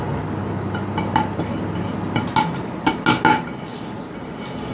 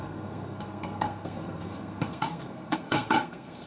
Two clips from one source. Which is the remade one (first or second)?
second